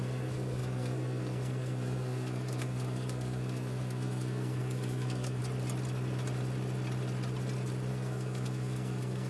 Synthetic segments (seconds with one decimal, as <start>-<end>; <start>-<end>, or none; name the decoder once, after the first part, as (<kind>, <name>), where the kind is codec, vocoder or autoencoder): 0.0-5.4 (codec, SNAC); 7.9-9.3